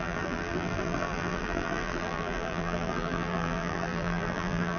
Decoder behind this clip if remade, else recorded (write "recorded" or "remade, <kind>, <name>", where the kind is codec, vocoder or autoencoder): remade, vocoder, BigVGAN v2